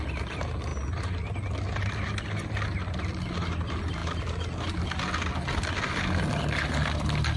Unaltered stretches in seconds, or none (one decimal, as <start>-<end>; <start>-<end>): 0.0-7.4